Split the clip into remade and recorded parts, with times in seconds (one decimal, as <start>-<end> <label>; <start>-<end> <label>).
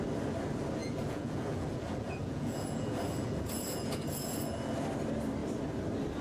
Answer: 0.0-0.8 recorded; 0.8-4.5 remade; 4.5-6.2 recorded